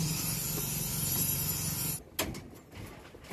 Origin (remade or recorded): recorded